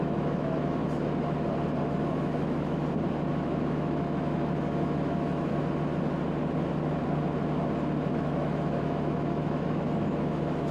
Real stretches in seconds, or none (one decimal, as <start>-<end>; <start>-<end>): 0.8-1.8; 2.8-3.3; 5.5-8.1